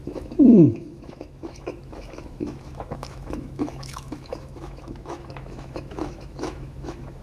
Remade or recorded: remade